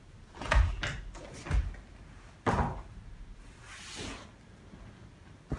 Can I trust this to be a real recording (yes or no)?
yes